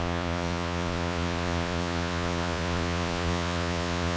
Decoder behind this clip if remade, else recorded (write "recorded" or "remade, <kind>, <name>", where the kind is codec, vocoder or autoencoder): remade, vocoder, Vocos